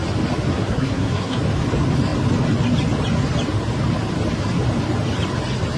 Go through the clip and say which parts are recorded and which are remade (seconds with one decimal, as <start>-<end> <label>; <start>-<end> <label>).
0.0-0.5 recorded; 0.5-1.4 remade; 1.4-5.8 recorded